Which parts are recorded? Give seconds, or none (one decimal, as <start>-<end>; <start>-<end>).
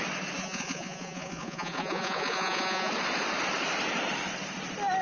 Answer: 0.0-0.4; 2.9-5.0